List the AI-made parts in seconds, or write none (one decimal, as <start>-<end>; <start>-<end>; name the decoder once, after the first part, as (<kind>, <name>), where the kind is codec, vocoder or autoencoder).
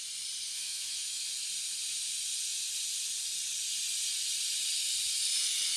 0.5-1.2 (autoencoder, DAC-VAE)